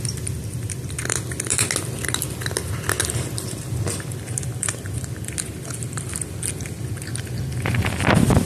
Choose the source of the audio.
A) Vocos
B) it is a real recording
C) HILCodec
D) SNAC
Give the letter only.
B